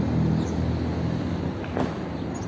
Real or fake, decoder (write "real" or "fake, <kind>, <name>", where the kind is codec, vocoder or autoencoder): real